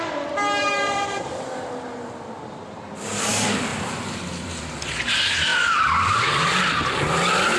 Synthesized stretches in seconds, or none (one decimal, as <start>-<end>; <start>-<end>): 0.6-3.3; 3.7-4.7; 5.5-6.6